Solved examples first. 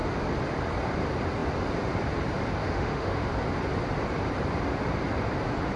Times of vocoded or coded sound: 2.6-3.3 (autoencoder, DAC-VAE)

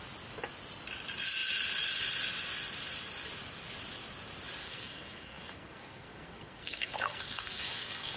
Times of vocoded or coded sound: 4.6-8.2 (codec, SNAC)